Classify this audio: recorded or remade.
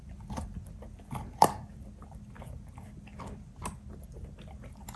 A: recorded